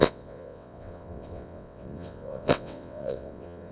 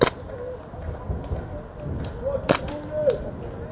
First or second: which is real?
second